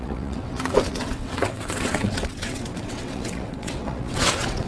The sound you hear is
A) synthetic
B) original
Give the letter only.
A